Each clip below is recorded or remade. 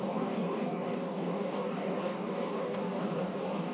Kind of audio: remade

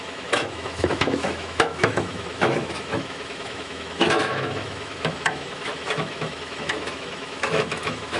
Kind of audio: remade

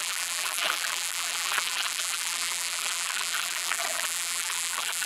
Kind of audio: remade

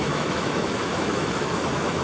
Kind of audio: remade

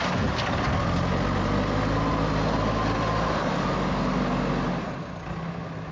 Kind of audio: recorded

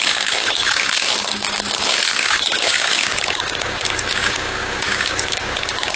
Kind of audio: remade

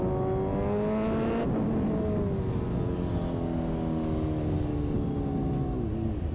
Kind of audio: recorded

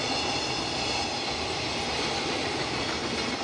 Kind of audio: recorded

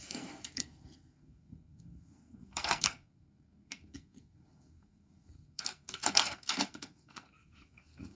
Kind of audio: remade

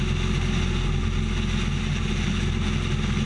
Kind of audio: recorded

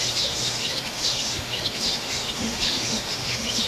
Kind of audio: remade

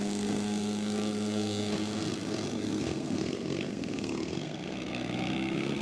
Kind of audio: remade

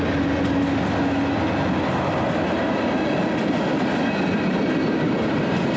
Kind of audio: recorded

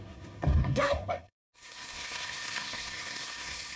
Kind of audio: remade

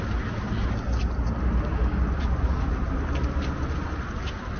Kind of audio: recorded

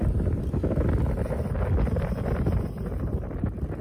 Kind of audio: recorded